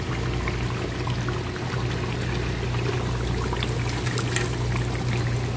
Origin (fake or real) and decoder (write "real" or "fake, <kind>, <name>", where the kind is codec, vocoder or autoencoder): real